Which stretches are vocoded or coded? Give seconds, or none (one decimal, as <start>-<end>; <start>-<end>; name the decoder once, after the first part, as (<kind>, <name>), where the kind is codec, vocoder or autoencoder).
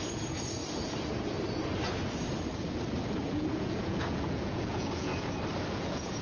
0.0-0.6 (vocoder, Vocos); 3.3-5.1; 5.7-6.2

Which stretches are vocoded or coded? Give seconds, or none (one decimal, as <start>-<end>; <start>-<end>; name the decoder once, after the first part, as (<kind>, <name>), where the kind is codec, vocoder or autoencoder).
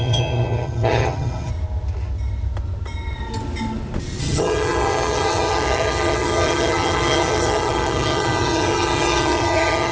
0.0-1.5 (vocoder, HiFi-GAN); 4.2-9.9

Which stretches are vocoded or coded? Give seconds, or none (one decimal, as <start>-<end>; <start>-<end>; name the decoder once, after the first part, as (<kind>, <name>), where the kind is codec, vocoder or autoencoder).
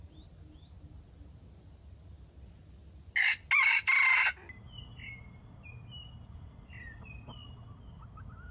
none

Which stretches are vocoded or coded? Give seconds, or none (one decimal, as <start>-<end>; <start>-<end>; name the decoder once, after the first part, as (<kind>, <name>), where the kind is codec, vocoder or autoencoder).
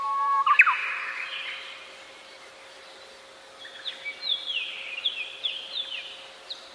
0.8-1.9 (vocoder, BigVGAN v2)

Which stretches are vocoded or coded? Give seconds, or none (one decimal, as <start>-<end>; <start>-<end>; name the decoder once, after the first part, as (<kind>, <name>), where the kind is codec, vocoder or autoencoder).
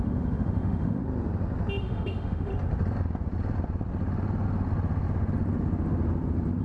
0.0-1.0 (autoencoder, DAC-VAE); 1.8-2.5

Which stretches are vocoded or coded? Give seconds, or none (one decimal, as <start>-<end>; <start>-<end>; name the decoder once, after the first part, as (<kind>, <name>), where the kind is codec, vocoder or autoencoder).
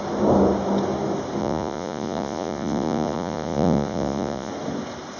1.4-4.5 (vocoder, Vocos)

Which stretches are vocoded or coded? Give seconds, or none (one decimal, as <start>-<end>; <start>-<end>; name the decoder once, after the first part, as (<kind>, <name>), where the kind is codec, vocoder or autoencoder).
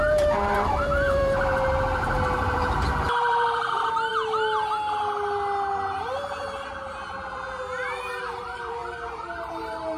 0.0-4.1 (vocoder, BigVGAN v2); 8.2-10.0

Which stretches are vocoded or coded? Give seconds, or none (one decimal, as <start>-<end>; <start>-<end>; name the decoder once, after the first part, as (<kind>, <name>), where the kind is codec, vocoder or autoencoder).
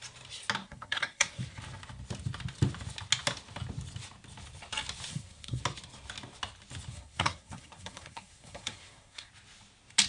0.6-1.4 (codec, SNAC); 5.1-5.6; 6.9-9.3